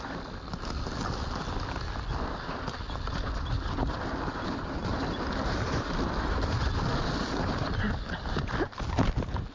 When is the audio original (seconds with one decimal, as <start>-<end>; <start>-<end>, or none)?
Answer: 0.0-9.5